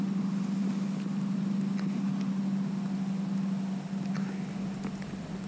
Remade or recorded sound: recorded